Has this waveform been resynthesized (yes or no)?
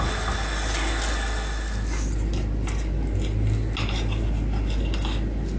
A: no